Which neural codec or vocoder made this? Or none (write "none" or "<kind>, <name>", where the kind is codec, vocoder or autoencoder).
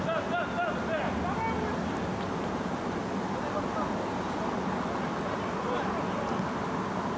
none